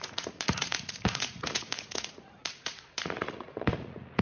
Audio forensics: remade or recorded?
remade